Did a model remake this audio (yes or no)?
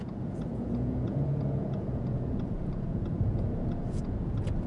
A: yes